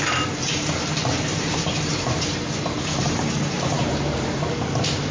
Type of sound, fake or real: fake